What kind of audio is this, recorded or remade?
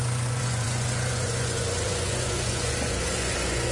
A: remade